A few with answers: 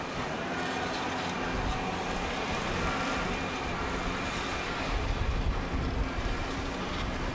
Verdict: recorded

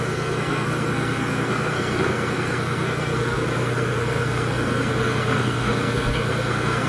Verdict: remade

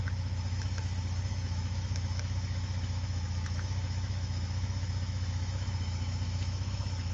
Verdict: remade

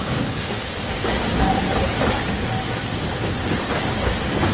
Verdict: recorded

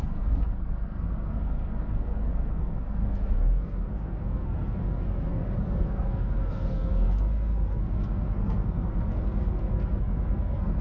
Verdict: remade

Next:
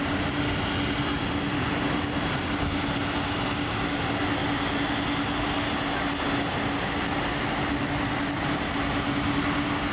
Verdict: recorded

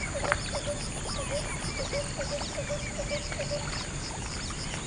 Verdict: recorded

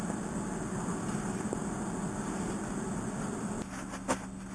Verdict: recorded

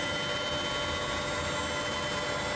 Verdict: recorded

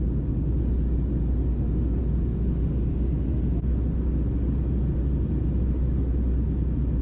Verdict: recorded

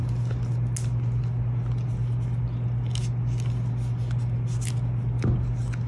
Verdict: recorded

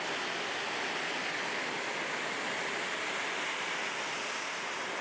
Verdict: recorded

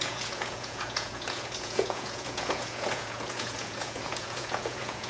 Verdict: remade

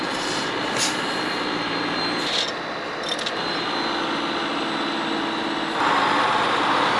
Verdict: recorded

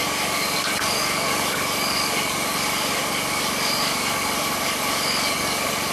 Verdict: remade